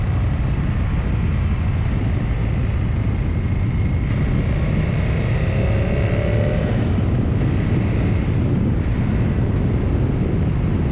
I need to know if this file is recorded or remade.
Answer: recorded